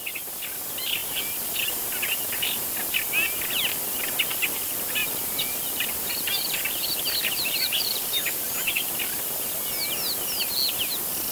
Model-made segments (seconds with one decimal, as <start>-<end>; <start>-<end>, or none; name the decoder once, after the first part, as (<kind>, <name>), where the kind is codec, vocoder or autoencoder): 5.0-8.9 (vocoder, BigVGAN v2)